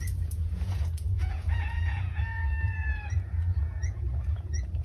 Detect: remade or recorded remade